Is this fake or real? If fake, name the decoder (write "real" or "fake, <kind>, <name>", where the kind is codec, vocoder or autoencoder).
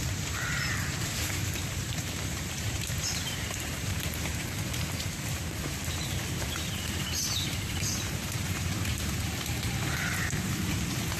fake, vocoder, BigVGAN v2